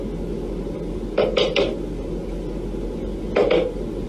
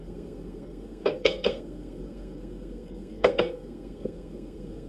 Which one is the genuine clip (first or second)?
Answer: first